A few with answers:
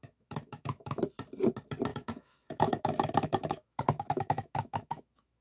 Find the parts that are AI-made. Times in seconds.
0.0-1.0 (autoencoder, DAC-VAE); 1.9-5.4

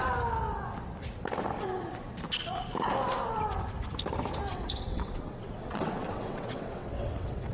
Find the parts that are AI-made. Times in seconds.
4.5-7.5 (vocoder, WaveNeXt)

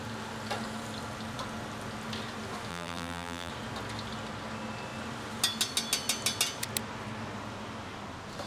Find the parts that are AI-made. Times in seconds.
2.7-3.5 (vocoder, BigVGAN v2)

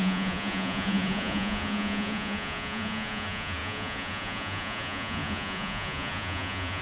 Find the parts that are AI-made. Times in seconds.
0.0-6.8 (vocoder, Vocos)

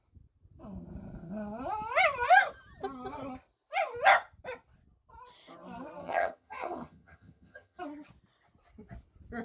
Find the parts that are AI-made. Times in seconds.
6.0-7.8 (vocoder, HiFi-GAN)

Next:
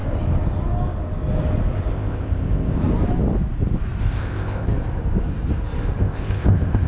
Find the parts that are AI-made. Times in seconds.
1.9-2.8 (codec, ZipCodec); 4.0-4.7; 6.0-6.9

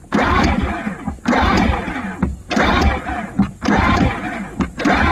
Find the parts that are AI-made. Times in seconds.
2.3-3.1 (vocoder, BigVGAN v2)